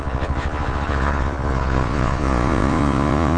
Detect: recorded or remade remade